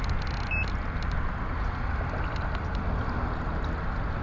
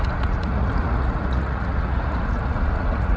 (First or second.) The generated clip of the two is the second